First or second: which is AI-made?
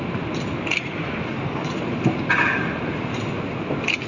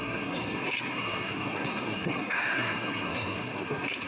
second